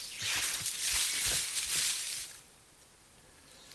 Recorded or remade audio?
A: recorded